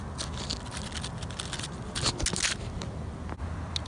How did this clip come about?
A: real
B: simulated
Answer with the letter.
A